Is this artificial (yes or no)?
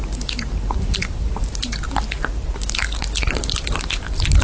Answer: yes